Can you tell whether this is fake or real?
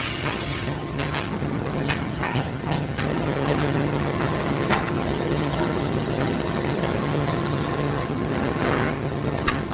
fake